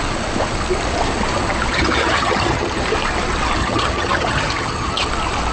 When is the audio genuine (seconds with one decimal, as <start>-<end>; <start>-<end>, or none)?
0.0-1.7; 2.8-3.6; 5.1-5.5